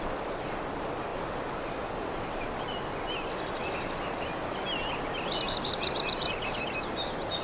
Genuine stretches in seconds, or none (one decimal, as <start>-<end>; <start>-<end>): 0.0-7.4